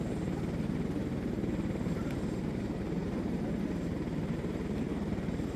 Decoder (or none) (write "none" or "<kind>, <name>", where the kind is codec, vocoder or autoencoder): vocoder, BigVGAN v2